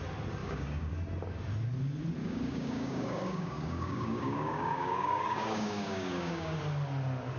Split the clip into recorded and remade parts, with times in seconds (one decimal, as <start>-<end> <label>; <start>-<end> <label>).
0.0-0.4 recorded; 0.4-0.9 remade; 0.9-2.2 recorded; 2.2-6.6 remade; 6.6-7.4 recorded